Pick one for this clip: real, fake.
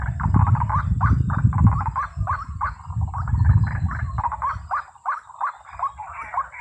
real